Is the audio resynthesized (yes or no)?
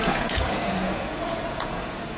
yes